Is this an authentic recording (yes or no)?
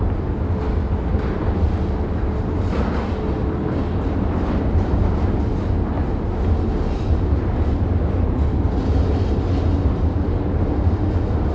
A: yes